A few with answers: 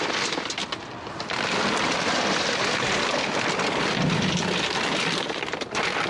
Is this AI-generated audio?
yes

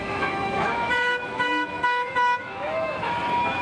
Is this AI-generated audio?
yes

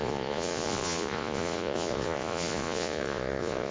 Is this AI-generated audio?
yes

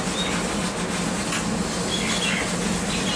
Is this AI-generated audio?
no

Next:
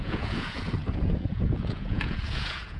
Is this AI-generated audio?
yes